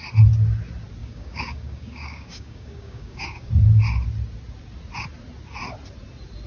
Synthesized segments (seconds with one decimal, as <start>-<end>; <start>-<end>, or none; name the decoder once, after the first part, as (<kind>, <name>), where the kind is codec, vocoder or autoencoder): 1.0-3.5 (codec, DAC)